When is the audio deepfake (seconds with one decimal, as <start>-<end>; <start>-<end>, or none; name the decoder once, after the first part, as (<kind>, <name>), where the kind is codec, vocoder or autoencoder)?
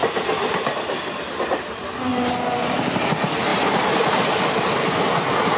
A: 2.1-3.1 (vocoder, BigVGAN v2); 3.5-4.3